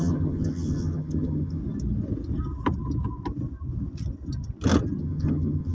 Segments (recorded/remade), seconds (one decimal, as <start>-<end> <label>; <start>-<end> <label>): 0.0-1.6 remade; 1.6-5.0 recorded; 5.0-5.7 remade